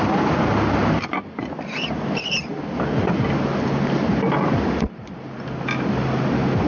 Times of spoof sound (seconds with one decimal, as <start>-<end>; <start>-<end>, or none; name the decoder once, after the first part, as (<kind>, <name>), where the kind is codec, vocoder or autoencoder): none